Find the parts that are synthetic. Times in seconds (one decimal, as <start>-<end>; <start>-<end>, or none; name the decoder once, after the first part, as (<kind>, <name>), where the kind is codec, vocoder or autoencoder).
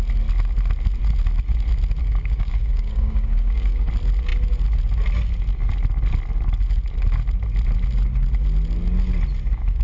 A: 2.0-3.9 (codec, DAC)